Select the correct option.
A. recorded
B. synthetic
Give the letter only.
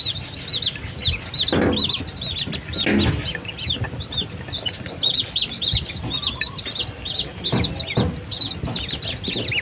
A